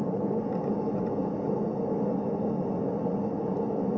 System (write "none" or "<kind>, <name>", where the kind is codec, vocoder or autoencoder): none